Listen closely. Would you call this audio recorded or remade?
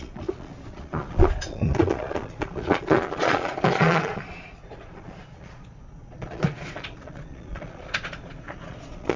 remade